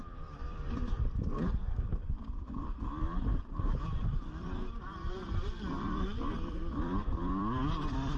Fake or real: fake